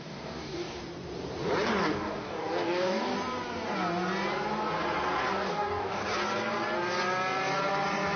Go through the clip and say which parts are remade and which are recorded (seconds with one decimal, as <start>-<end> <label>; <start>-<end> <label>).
0.0-0.8 remade; 0.8-1.8 recorded; 1.8-3.1 remade; 3.1-5.3 recorded; 5.3-6.0 remade; 6.0-8.2 recorded